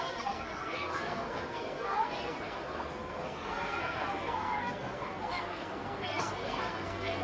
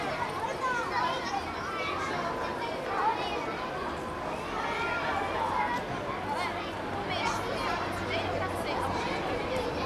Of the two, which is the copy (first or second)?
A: first